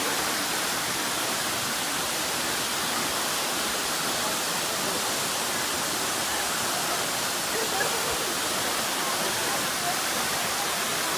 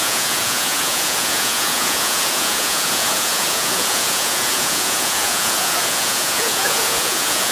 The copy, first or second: second